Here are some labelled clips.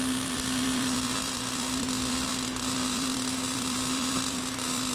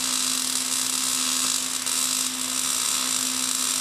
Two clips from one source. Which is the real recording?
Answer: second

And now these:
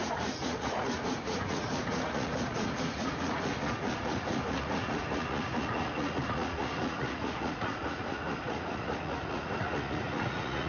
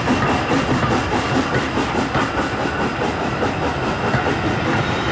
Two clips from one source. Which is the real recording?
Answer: second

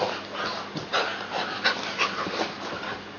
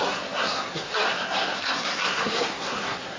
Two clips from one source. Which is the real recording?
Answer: first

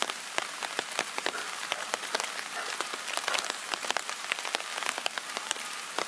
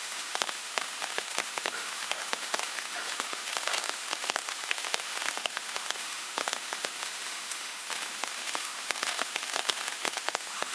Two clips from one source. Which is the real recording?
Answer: first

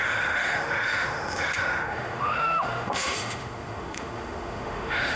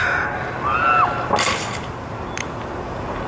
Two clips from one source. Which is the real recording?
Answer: second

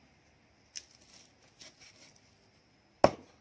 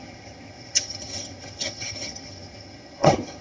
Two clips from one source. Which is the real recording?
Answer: first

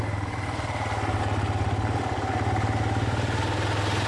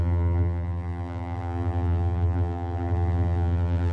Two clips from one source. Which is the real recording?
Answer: first